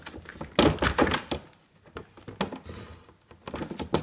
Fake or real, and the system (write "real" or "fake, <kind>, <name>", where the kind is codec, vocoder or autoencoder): real